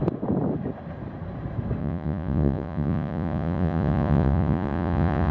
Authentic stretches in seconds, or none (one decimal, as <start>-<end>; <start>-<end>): 0.0-1.8